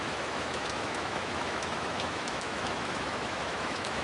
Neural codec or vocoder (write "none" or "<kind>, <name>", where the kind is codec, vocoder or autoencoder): autoencoder, DAC-VAE